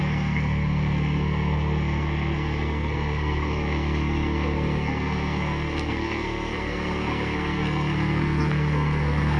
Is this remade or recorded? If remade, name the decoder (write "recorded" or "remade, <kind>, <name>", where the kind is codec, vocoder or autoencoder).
remade, codec, SNAC